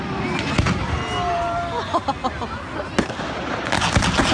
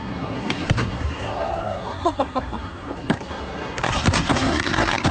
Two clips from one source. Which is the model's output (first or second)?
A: second